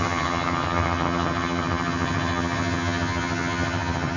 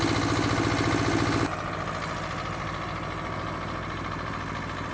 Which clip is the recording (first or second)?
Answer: second